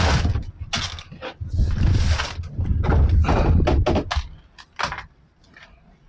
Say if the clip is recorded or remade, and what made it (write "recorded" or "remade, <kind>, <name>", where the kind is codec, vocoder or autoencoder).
recorded